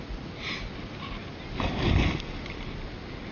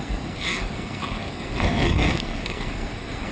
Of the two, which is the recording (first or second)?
first